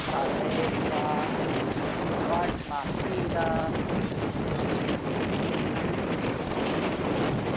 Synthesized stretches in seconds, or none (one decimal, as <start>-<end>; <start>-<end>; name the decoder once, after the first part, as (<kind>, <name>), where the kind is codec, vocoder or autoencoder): none